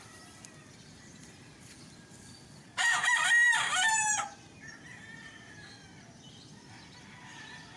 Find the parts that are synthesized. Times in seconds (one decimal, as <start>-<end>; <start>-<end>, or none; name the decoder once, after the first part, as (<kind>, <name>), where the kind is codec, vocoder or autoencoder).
0.0-7.8 (vocoder, BigVGAN v2)